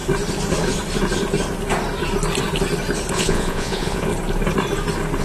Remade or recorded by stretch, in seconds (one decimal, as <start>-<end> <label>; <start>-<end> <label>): 0.0-3.1 recorded; 3.1-4.1 remade; 4.1-5.2 recorded